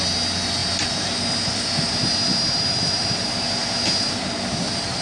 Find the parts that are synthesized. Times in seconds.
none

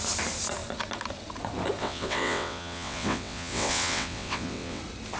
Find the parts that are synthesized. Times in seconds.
1.8-4.8 (vocoder, WaveNeXt)

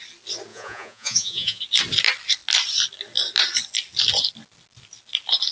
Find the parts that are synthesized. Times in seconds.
0.5-1.6 (vocoder, Vocos)

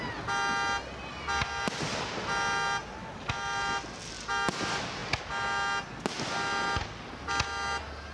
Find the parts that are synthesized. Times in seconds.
none

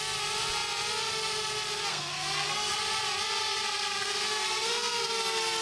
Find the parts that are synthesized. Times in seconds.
1.9-2.8 (codec, SNAC); 3.4-5.1

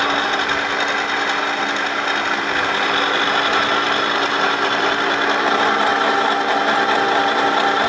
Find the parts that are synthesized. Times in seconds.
none